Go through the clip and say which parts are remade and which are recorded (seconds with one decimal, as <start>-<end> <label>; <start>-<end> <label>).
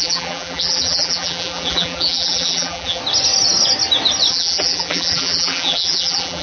0.0-3.0 remade; 3.0-4.3 recorded; 4.3-6.4 remade